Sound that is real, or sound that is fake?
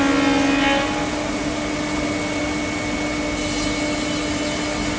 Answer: real